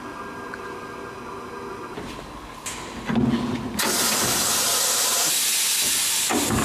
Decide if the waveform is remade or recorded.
recorded